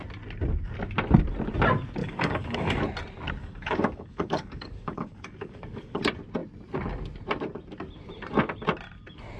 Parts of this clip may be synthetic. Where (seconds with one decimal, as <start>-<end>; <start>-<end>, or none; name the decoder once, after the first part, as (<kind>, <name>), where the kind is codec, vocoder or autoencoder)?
2.0-2.8 (codec, DAC); 3.4-6.0